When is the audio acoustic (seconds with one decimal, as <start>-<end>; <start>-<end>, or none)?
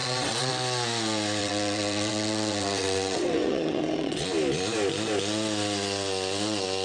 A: 0.5-1.4; 4.2-6.8